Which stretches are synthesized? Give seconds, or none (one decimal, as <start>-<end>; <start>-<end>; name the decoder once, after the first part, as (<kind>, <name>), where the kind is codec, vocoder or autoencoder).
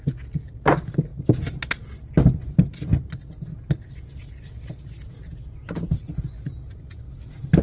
none